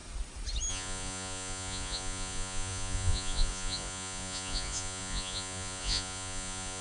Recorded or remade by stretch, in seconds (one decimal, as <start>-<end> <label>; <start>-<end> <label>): 0.0-0.7 recorded; 0.7-6.8 remade

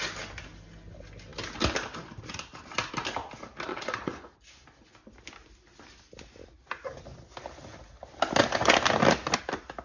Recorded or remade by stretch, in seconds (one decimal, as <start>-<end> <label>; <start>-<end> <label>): 0.0-3.7 recorded; 3.7-4.3 remade; 4.3-9.8 recorded

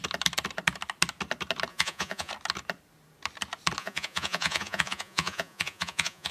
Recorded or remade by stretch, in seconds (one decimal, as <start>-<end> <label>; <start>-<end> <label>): 0.0-1.7 recorded; 1.7-2.3 remade; 2.3-3.8 recorded; 3.8-6.3 remade

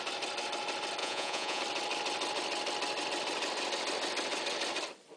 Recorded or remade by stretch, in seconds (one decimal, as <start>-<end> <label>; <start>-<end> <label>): 0.0-1.0 recorded; 1.0-1.6 remade; 1.6-5.2 recorded

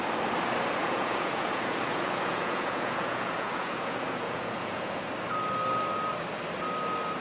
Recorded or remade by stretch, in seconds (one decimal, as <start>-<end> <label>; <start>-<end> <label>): 0.0-0.8 recorded; 0.8-5.1 remade; 5.1-7.2 recorded